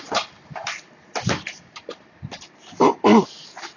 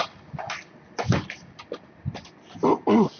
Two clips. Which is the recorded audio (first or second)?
second